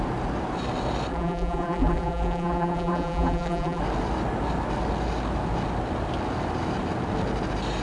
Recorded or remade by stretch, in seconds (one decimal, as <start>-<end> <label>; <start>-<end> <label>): 0.0-1.1 recorded; 1.1-3.8 remade; 3.8-7.8 recorded